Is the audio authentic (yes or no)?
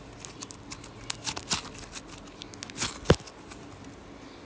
yes